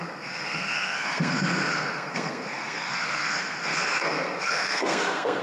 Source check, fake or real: fake